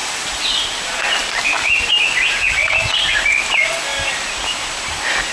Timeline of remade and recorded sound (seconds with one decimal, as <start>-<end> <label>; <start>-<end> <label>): 0.0-1.2 recorded; 1.2-2.0 remade; 2.0-5.3 recorded